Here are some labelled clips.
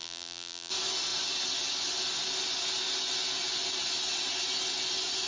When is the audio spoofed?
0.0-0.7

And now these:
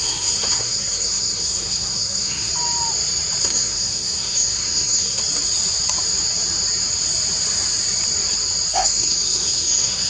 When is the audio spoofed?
0.0-2.5; 3.4-5.2; 8.7-10.1

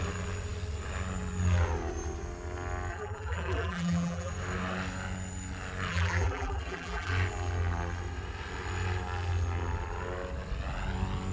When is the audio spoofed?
2.9-4.3; 5.9-7.1

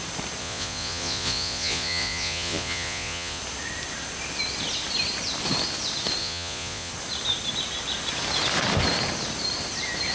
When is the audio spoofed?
0.4-3.4; 6.2-6.9